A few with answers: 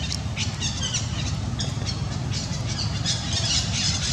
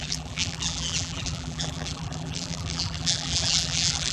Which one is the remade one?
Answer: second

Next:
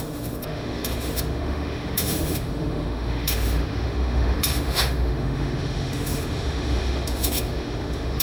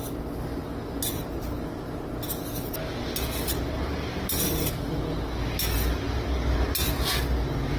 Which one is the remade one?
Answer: first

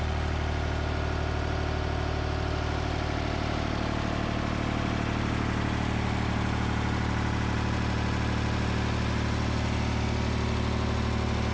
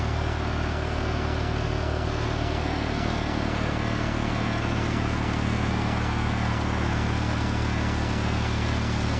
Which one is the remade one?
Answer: second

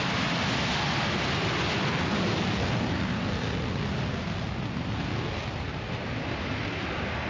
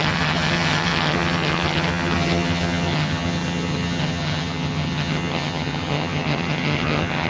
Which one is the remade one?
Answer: second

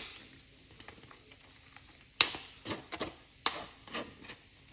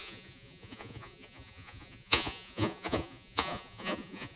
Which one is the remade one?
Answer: second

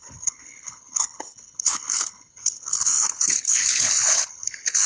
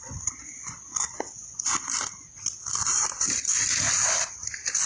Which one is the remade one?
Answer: first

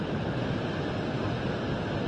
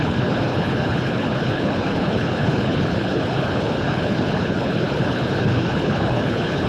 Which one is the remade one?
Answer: second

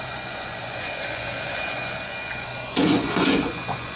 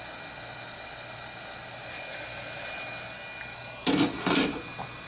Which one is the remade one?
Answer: first